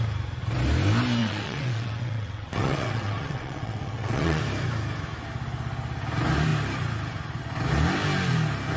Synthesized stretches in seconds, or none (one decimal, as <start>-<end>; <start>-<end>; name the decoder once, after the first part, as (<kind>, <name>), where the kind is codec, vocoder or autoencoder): 1.2-4.4 (vocoder, WaveNeXt)